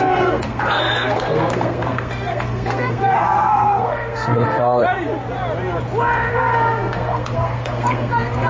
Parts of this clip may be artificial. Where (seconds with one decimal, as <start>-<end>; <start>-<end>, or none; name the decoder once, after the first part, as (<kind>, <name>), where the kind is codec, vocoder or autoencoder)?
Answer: 0.0-4.8 (codec, SNAC); 6.3-8.5